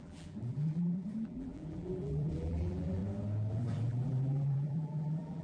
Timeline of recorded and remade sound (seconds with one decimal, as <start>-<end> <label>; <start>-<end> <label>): 0.0-3.0 remade; 3.0-3.5 recorded; 3.5-5.4 remade